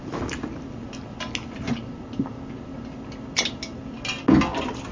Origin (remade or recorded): recorded